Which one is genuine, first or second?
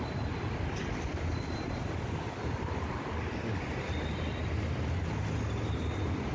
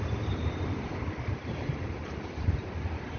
first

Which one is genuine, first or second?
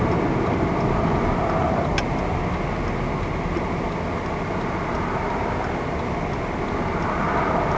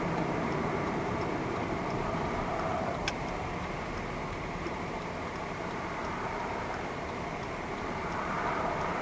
first